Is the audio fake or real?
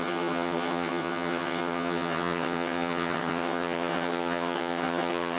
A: fake